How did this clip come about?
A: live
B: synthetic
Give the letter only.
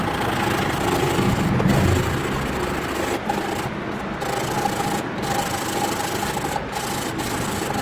A